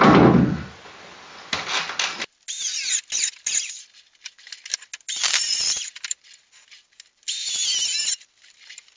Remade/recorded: recorded